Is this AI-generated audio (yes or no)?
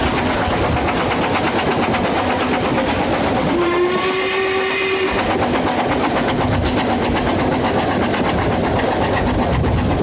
no